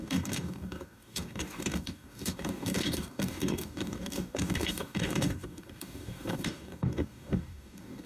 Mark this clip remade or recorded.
remade